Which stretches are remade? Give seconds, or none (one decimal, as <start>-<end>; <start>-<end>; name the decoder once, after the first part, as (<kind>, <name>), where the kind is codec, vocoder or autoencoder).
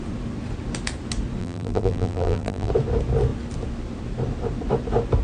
1.4-2.7 (vocoder, BigVGAN v2)